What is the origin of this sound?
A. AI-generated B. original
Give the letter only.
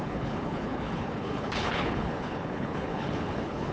A